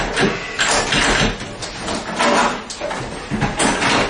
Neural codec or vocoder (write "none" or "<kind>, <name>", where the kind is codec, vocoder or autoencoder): none